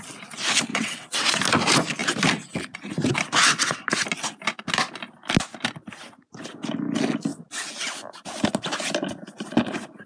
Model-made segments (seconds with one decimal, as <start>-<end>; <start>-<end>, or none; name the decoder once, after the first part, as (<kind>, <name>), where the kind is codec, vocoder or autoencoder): 0.7-1.4 (vocoder, WaveNeXt)